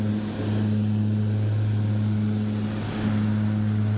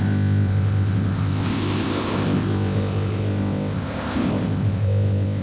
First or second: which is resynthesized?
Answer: second